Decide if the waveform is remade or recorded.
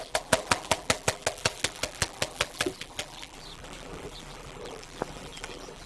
remade